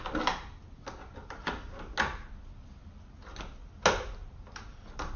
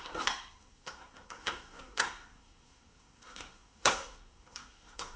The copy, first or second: second